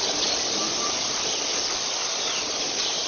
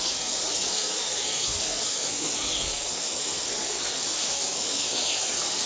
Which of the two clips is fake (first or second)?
second